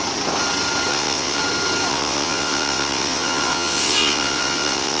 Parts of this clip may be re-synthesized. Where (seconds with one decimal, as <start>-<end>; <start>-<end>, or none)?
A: 0.9-1.4; 1.9-5.0